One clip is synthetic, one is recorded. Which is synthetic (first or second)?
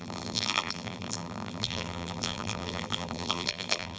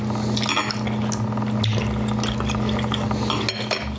first